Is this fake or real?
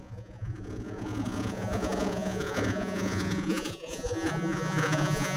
fake